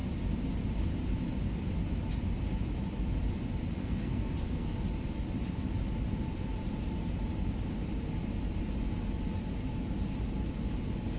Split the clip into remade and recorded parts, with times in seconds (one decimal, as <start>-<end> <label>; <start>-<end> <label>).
0.0-3.8 recorded; 3.8-4.8 remade; 4.8-11.2 recorded